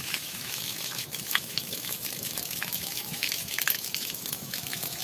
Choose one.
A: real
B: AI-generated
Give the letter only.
B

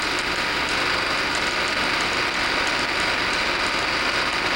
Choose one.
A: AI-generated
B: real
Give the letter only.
B